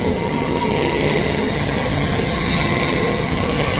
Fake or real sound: fake